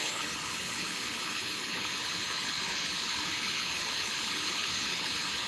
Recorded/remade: remade